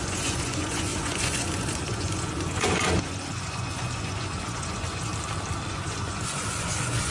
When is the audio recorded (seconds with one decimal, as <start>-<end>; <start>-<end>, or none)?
5.1-5.7